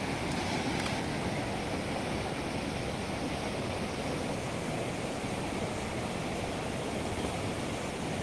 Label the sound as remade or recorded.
recorded